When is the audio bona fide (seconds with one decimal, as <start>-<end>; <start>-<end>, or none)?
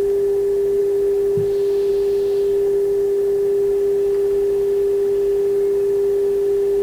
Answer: 0.0-6.8